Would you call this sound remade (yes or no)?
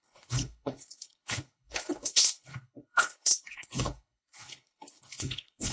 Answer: yes